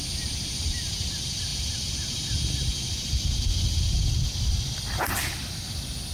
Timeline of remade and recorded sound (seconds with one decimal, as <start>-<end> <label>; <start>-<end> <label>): 0.0-6.1 recorded